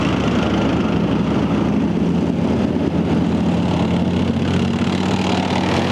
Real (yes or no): yes